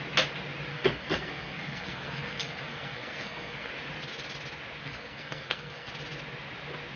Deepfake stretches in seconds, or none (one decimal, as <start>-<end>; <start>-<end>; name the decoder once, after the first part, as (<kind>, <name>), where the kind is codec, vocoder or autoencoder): 0.7-3.7 (codec, SNAC); 4.8-5.9